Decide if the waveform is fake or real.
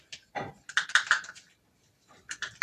real